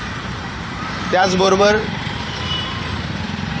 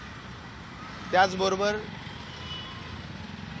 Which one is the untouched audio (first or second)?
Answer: second